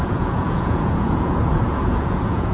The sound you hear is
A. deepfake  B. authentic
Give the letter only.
A